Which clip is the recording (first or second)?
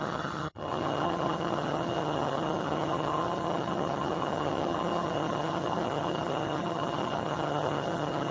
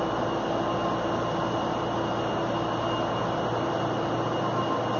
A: second